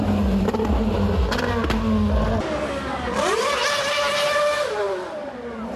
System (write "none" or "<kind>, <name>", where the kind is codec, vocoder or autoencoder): none